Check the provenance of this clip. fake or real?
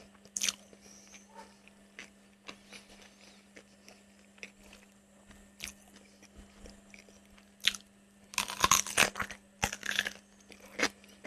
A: real